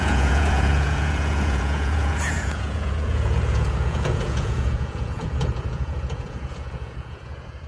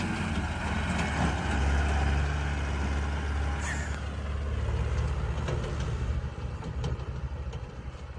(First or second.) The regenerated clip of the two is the first